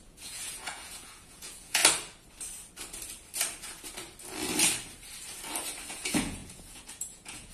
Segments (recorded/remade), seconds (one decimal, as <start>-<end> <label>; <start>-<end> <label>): 0.0-1.8 remade; 1.8-5.9 recorded; 5.9-7.5 remade